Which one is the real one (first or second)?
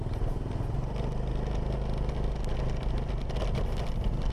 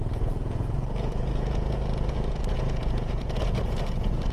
first